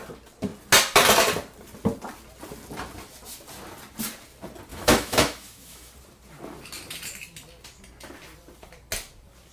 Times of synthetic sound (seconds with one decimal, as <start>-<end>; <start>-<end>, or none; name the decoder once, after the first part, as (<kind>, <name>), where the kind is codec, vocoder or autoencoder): 4.7-5.9 (autoencoder, DAC-VAE)